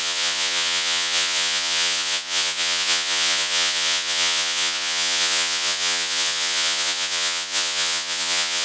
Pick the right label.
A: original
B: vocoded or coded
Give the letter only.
B